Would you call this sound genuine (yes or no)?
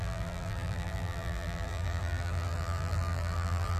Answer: no